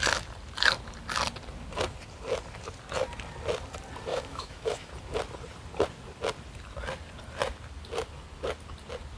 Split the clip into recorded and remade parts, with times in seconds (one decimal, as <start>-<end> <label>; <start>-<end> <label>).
0.0-4.1 recorded; 4.1-4.9 remade; 4.9-9.2 recorded